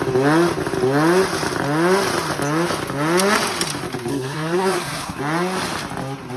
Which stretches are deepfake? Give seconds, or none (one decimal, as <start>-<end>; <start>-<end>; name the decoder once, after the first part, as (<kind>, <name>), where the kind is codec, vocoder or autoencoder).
4.1-5.2 (codec, SNAC)